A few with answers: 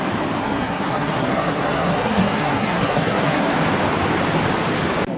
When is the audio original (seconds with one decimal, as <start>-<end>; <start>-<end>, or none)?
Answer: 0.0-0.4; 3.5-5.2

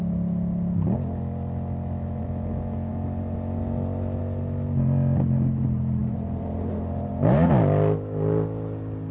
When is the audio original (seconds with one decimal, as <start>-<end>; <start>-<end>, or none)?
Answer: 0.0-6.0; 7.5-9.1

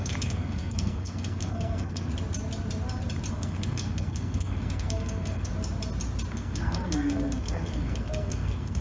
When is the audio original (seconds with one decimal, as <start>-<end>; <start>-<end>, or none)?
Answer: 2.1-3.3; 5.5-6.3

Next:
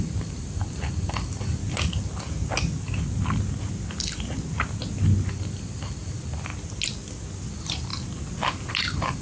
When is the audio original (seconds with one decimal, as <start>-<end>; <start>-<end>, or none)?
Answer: 1.6-5.3; 6.5-7.5; 7.9-8.7

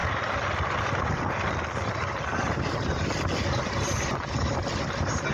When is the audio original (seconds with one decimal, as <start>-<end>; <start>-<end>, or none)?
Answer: 0.0-5.3

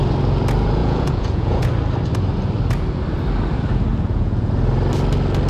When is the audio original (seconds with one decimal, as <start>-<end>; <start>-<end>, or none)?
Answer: 0.0-0.8; 1.7-3.9; 4.5-5.5

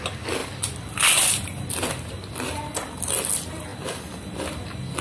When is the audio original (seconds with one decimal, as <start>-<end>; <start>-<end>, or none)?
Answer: 0.0-5.0

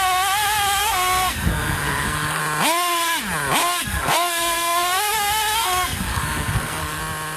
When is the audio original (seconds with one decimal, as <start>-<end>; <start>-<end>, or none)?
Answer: 0.0-0.8; 2.4-3.6; 7.0-7.4